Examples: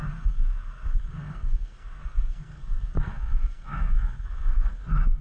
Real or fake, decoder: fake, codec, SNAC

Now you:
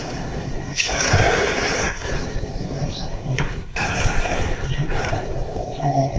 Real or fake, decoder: fake, codec, SNAC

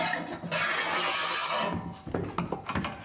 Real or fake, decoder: real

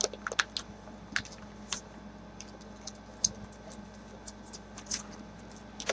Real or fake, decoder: real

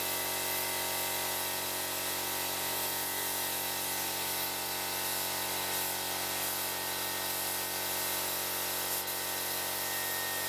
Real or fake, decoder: real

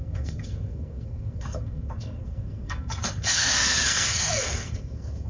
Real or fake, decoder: fake, codec, SNAC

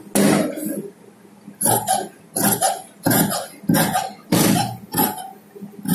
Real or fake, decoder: real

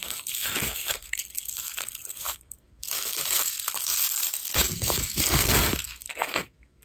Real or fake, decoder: fake, codec, SNAC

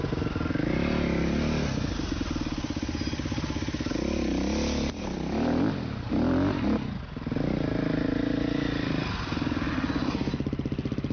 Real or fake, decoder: real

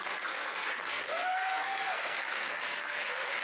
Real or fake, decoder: fake, codec, SNAC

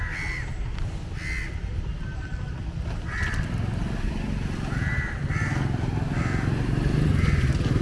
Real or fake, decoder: real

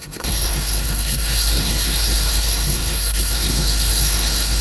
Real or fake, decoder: fake, codec, SNAC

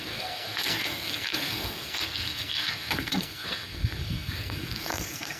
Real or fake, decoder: fake, codec, SNAC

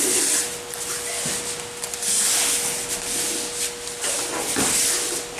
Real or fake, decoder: real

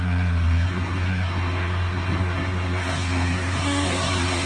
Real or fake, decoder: fake, codec, SNAC